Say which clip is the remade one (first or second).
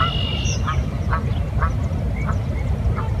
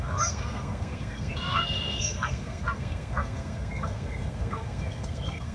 second